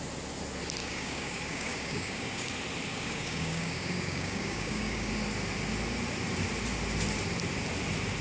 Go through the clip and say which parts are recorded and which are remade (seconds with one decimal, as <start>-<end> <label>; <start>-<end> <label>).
0.0-0.8 recorded; 0.8-2.5 remade; 2.5-2.9 recorded; 2.9-5.1 remade; 5.1-8.2 recorded